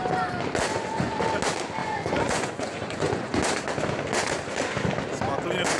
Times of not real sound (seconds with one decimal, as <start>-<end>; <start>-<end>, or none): 0.7-1.2; 1.8-3.4